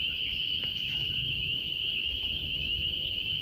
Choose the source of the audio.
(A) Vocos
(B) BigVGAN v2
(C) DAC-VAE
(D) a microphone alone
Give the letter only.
C